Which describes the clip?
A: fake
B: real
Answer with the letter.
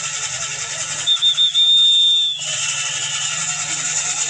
B